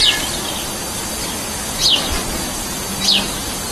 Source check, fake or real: real